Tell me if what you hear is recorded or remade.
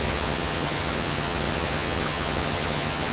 remade